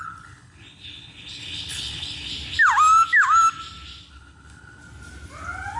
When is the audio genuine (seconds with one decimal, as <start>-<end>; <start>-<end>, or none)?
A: 2.3-4.1; 4.8-5.8